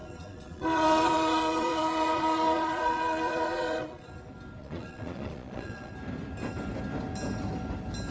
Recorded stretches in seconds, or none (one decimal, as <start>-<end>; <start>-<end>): 4.1-4.6; 5.9-8.1